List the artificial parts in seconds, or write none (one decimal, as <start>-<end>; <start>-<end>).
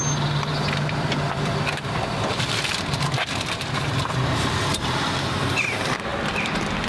0.5-6.1